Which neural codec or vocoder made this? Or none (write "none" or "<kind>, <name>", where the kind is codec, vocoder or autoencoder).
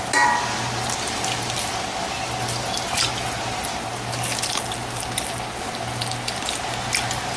none